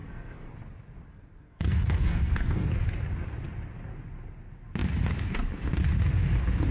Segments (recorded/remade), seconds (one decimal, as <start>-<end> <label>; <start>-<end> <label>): 0.0-0.5 remade; 0.5-1.3 recorded; 1.3-2.7 remade; 2.7-6.7 recorded